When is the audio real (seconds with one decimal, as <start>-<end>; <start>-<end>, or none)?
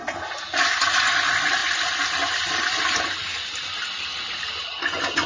0.0-5.3